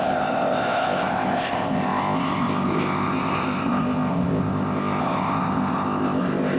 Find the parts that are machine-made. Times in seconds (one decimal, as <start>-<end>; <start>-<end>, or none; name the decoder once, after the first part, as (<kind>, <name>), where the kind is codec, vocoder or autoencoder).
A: 0.0-6.6 (codec, ZipCodec)